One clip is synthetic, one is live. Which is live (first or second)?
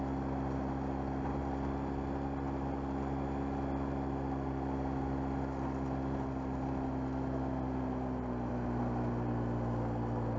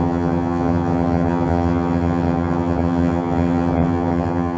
first